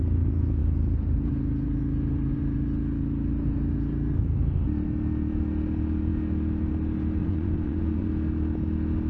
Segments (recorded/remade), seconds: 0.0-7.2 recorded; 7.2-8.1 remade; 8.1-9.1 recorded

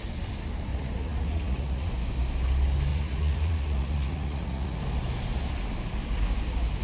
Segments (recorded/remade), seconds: 0.0-0.7 recorded; 0.7-1.9 remade; 1.9-2.9 recorded; 2.9-4.8 remade; 4.8-6.8 recorded

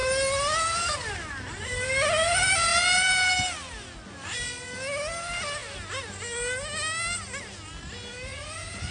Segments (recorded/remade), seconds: 0.0-8.9 recorded